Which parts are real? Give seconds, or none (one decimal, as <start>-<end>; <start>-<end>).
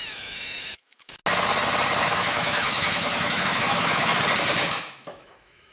1.2-2.0; 4.1-4.8